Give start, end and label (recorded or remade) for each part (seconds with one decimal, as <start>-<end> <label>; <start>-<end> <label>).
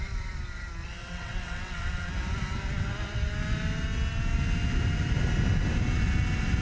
0.0-1.0 recorded; 1.0-2.1 remade; 2.1-6.6 recorded